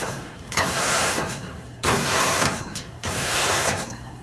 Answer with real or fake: fake